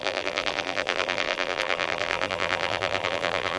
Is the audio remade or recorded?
remade